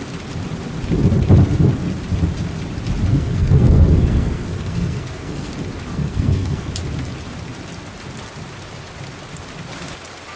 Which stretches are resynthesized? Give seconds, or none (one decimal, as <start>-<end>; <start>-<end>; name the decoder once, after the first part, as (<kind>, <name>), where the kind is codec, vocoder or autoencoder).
3.1-5.5 (codec, SNAC); 5.9-6.7

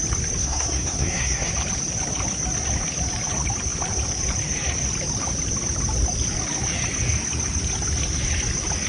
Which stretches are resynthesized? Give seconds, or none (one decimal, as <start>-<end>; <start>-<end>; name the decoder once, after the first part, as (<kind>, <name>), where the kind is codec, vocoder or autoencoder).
0.4-1.5 (codec, SNAC)

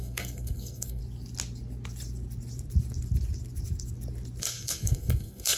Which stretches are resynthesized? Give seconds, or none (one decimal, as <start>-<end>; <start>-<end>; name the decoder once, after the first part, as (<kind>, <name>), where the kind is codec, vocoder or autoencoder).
0.0-1.0 (codec, SNAC); 4.4-5.6

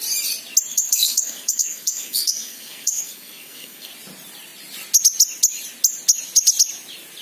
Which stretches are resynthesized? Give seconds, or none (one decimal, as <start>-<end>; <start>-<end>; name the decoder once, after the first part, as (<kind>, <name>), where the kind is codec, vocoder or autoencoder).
0.7-3.9 (codec, SNAC)